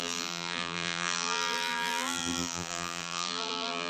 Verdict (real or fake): fake